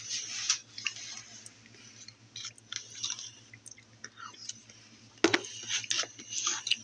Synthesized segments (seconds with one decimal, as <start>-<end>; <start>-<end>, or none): none